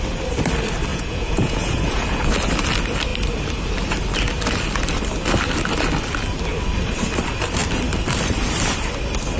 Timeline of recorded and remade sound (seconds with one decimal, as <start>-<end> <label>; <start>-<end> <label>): 0.0-0.9 recorded; 0.9-2.2 remade; 2.2-9.4 recorded

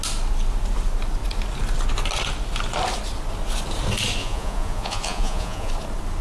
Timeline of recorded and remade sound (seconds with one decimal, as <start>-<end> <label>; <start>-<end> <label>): 0.0-4.2 recorded; 4.2-5.7 remade; 5.7-6.2 recorded

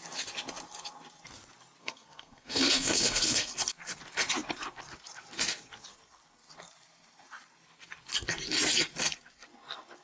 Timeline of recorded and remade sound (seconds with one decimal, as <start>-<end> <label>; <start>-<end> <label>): 0.0-1.8 recorded; 1.8-3.5 remade; 3.5-10.0 recorded

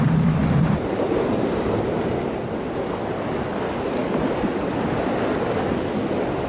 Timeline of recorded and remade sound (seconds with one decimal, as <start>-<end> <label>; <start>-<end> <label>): 0.0-6.5 recorded